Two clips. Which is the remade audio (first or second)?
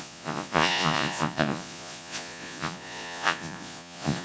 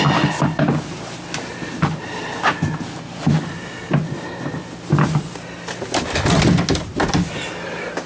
first